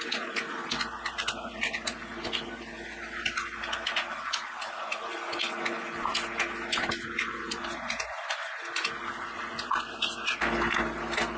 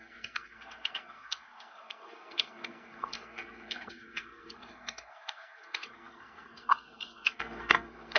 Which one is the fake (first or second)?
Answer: second